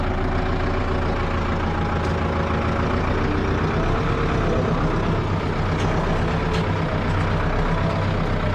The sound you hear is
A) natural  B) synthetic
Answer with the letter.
A